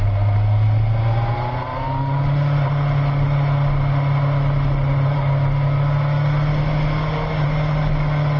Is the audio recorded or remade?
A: recorded